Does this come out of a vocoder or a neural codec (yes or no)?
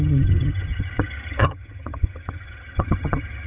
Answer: yes